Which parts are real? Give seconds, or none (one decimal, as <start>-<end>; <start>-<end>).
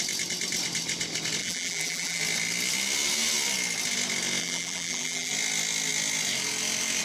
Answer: 0.0-1.4; 2.2-4.4; 5.3-7.0